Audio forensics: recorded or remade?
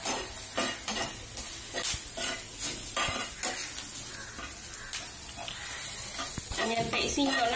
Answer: recorded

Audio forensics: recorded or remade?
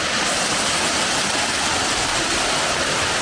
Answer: recorded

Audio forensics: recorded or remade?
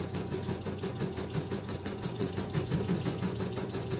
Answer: remade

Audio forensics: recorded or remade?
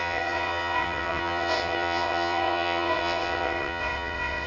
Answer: remade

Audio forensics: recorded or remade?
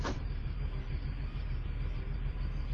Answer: remade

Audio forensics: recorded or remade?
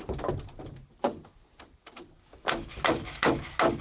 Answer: recorded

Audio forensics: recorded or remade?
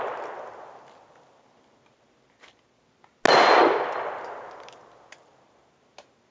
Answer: recorded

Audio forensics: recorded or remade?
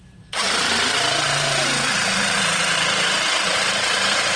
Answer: remade